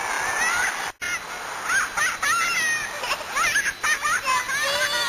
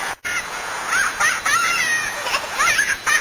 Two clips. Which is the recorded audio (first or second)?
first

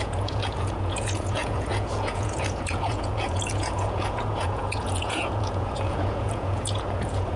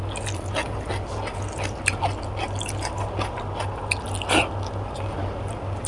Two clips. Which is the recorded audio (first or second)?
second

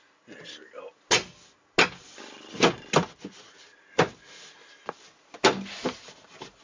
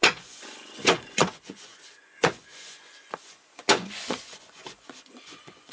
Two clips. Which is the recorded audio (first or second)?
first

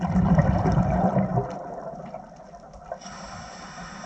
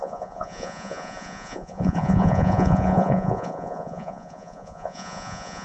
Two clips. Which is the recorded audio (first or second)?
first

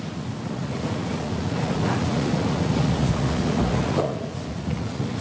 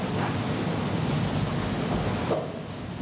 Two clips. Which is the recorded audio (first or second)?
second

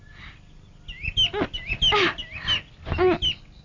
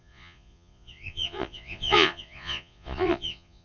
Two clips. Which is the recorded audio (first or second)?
first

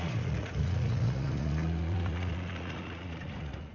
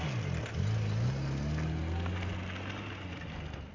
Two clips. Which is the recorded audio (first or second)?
second